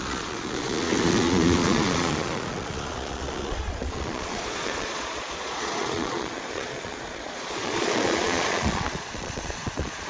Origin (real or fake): fake